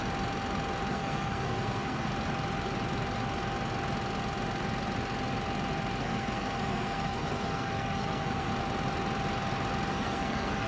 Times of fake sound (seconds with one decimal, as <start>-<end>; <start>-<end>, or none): 0.9-2.1; 6.0-8.5; 9.9-10.7